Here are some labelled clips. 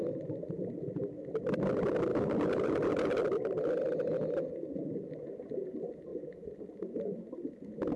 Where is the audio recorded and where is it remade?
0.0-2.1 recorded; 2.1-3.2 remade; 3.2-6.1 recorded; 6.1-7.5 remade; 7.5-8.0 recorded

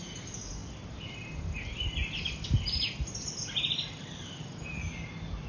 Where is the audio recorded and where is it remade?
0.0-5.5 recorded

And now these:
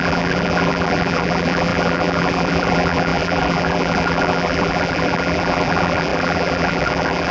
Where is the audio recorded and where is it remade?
0.0-7.3 remade